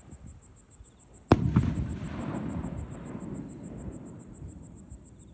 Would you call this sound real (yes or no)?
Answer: yes